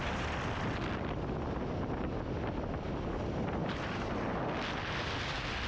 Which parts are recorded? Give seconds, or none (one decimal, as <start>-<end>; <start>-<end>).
0.0-3.6; 4.4-5.7